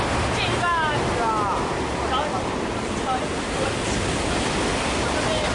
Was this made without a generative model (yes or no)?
yes